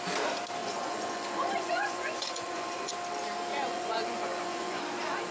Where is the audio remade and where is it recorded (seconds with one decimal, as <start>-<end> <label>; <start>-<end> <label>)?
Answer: 0.0-0.6 recorded; 0.6-2.9 remade; 2.9-3.5 recorded; 3.5-4.8 remade; 4.8-5.3 recorded